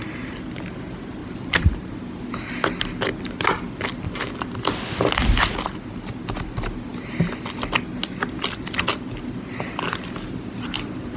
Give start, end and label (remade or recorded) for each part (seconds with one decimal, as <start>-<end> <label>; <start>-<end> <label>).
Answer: 0.0-1.2 recorded; 1.2-1.7 remade; 1.7-11.2 recorded